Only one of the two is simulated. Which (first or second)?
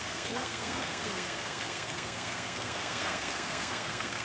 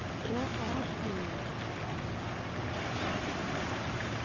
first